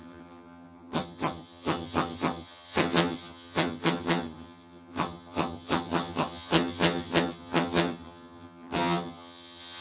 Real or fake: fake